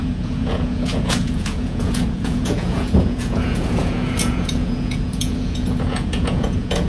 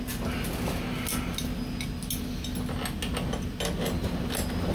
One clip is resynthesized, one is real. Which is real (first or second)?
second